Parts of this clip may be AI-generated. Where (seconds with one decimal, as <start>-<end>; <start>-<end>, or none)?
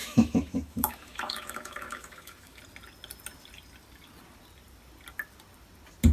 0.0-2.6